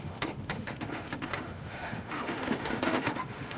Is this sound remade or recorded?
remade